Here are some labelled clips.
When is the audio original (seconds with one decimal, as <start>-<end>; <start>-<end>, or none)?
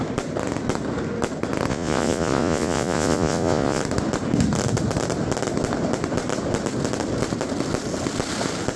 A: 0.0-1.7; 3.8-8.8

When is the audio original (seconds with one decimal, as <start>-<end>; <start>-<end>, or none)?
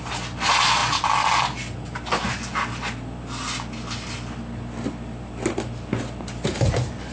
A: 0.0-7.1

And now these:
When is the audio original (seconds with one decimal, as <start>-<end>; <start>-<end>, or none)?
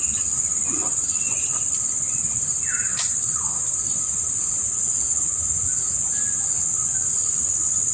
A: 0.0-7.9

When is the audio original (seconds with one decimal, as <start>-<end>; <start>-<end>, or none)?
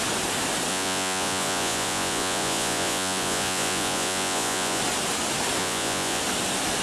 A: 0.0-0.7; 4.8-5.6; 6.2-6.8